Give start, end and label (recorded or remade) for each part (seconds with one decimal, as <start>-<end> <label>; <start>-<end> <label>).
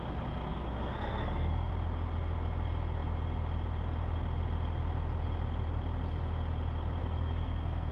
0.0-0.5 recorded; 0.5-1.7 remade; 1.7-7.0 recorded; 7.0-7.9 remade